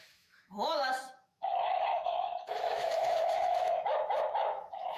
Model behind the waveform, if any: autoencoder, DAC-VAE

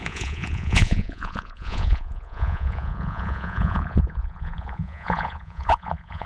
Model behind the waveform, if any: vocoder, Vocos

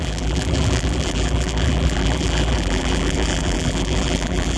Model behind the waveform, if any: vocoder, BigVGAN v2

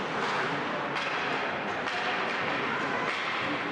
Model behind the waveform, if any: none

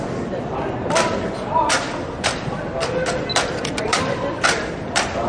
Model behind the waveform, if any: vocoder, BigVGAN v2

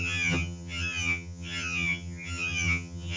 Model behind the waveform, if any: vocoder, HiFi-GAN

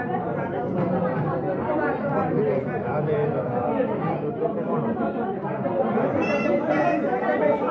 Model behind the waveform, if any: vocoder, BigVGAN v2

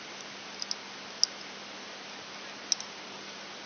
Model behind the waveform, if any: none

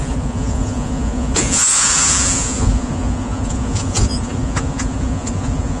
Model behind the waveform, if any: vocoder, Vocos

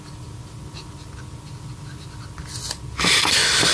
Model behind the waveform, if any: none